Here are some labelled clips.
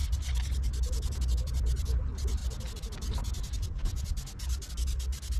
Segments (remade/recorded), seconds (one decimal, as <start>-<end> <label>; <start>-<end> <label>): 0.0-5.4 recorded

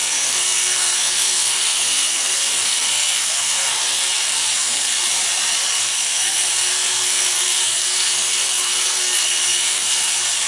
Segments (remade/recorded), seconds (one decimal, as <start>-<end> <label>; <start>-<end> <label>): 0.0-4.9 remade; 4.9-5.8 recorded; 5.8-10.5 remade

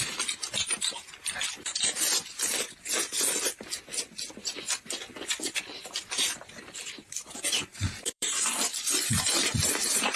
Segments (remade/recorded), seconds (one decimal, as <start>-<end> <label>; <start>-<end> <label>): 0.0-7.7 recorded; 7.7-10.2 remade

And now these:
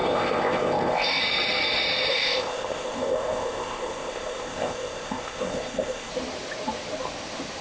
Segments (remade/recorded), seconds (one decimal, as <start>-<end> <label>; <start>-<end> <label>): 0.0-1.2 remade; 1.2-2.1 recorded; 2.1-6.1 remade; 6.1-7.6 recorded

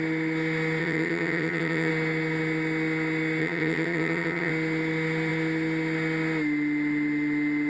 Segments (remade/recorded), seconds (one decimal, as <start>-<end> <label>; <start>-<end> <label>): 0.0-0.8 recorded; 0.8-1.9 remade; 1.9-3.4 recorded; 3.4-4.5 remade; 4.5-7.7 recorded

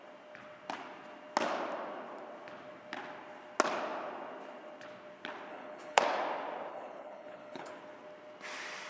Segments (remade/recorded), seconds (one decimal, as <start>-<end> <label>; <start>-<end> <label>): 0.0-5.5 recorded; 5.5-6.0 remade; 6.0-6.7 recorded; 6.7-7.7 remade; 7.7-8.9 recorded

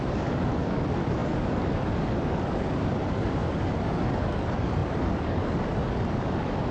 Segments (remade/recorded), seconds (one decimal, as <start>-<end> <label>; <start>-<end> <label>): 0.0-6.7 remade